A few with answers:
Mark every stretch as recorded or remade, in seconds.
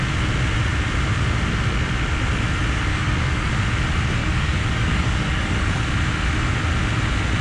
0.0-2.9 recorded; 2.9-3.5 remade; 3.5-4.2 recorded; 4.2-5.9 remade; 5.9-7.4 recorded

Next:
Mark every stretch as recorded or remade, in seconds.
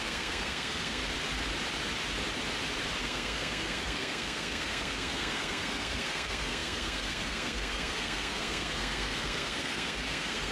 0.0-1.0 remade; 1.0-3.0 recorded; 3.0-10.5 remade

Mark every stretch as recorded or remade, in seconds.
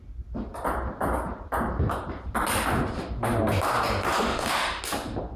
0.0-4.3 recorded; 4.3-4.8 remade; 4.8-5.4 recorded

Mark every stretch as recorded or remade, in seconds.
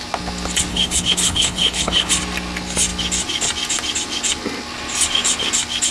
0.0-0.7 recorded; 0.7-2.1 remade; 2.1-5.9 recorded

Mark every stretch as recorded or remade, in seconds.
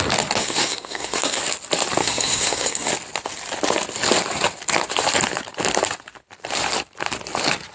0.0-0.4 recorded; 0.4-1.4 remade; 1.4-2.0 recorded; 2.0-2.9 remade; 2.9-7.7 recorded